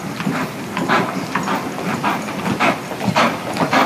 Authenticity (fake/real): real